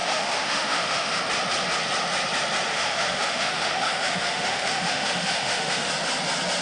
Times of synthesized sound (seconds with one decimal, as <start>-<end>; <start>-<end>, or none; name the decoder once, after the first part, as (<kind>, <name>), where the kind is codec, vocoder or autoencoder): 0.0-1.2 (autoencoder, DAC-VAE); 2.7-5.9